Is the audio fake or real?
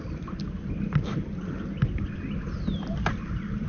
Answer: fake